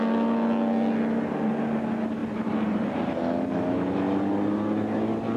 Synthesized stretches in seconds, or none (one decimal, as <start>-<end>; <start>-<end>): 2.2-3.1